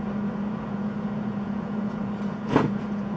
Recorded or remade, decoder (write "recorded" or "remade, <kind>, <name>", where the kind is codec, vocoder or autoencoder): remade, vocoder, Vocos